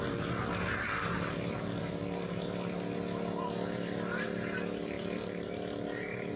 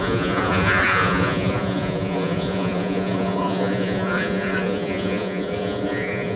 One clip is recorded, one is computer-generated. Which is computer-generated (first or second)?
second